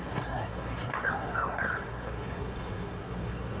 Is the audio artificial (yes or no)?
yes